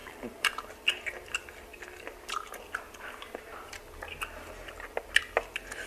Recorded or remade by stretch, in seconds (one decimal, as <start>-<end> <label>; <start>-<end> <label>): 0.0-0.6 remade; 0.6-5.9 recorded